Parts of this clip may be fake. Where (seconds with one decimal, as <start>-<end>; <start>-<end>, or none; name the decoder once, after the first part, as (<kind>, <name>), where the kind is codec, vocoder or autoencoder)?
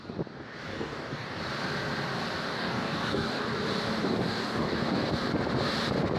0.7-1.4 (codec, DAC); 2.5-3.4; 4.0-5.1